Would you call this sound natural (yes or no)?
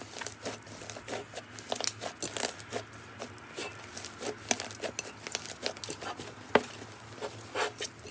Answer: yes